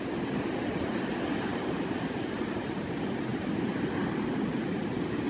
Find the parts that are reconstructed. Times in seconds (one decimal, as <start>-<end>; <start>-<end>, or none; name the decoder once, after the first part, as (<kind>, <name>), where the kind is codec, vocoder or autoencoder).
none

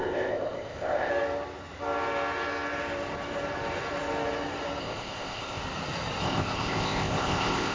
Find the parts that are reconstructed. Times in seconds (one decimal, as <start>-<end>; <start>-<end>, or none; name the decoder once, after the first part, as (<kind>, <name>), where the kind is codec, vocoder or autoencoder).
0.0-1.1 (codec, ZipCodec); 4.8-5.6; 6.2-7.7

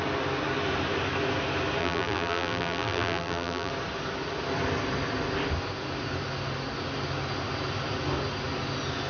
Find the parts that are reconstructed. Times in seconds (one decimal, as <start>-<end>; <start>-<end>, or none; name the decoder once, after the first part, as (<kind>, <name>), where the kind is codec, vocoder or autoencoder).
1.8-3.7 (vocoder, BigVGAN v2)

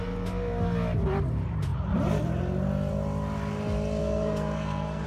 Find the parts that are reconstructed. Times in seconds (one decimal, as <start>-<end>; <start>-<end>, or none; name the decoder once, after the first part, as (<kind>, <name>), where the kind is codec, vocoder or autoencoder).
4.0-5.1 (codec, SNAC)

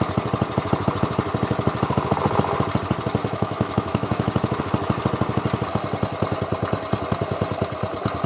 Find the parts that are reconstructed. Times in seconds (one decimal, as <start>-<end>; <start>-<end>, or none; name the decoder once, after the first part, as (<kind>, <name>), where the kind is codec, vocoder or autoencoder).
3.2-4.6 (autoencoder, DAC-VAE)